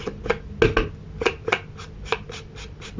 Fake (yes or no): no